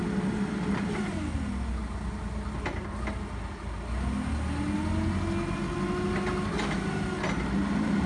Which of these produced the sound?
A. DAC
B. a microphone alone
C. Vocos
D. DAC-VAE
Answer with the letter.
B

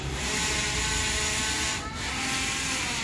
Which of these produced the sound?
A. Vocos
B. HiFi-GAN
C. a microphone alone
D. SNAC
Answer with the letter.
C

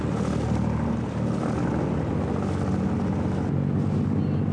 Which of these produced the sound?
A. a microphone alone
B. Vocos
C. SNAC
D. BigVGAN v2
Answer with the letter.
A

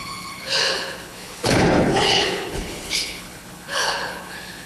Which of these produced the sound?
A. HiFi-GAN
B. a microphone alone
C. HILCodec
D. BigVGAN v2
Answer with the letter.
C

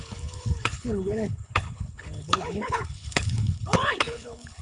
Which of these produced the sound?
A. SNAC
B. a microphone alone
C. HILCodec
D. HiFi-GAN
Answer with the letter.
C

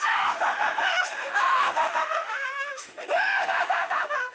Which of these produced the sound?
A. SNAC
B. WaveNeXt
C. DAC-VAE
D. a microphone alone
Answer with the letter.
C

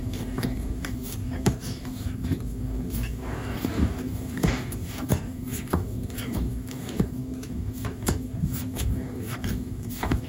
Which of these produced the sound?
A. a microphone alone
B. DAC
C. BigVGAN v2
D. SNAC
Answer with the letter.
B